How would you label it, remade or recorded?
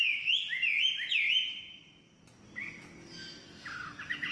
recorded